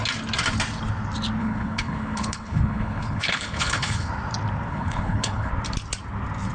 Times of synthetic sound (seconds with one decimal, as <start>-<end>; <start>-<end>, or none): 1.4-4.1; 4.7-5.5